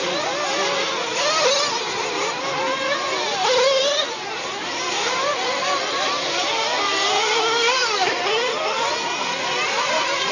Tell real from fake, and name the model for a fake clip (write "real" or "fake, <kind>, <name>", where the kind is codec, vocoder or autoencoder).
real